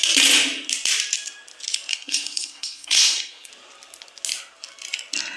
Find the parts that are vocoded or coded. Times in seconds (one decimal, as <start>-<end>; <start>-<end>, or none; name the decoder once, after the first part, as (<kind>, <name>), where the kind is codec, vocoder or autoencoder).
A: 1.9-3.5 (codec, SNAC)